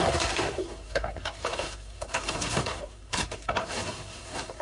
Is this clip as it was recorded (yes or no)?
no